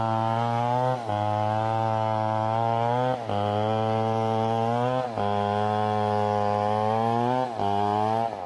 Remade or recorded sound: recorded